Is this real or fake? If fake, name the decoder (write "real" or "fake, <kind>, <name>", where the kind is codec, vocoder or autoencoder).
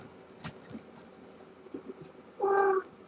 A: real